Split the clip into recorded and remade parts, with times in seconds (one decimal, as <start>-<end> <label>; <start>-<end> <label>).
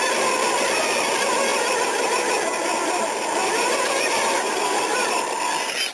0.0-1.5 recorded; 1.5-2.3 remade; 2.3-3.4 recorded; 3.4-5.2 remade; 5.2-5.9 recorded